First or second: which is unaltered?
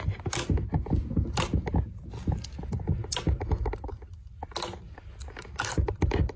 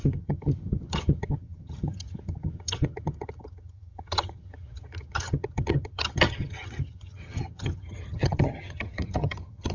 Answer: first